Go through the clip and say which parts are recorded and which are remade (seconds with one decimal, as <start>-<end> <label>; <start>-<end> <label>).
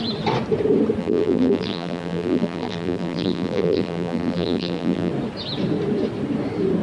0.0-1.0 recorded; 1.0-5.1 remade; 5.1-6.8 recorded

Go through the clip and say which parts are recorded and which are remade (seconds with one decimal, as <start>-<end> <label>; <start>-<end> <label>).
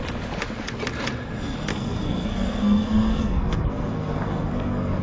0.0-1.7 recorded; 1.7-5.0 remade